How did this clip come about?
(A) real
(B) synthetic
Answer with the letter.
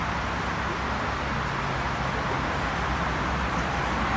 A